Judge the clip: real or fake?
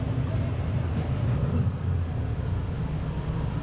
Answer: real